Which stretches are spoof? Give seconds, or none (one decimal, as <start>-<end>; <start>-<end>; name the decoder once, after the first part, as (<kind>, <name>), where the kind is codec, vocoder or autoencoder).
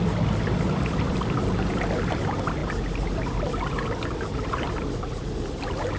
none